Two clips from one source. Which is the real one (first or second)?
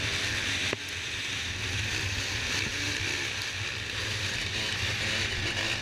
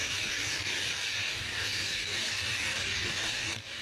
first